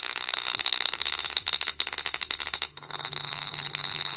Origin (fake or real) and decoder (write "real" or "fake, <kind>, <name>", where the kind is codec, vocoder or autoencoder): fake, codec, HILCodec